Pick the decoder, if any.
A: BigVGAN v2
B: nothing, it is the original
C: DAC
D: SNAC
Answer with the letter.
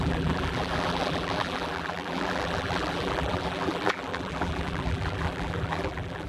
A